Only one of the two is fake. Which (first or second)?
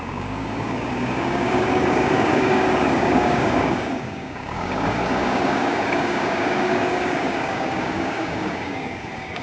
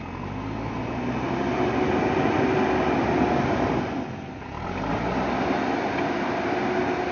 first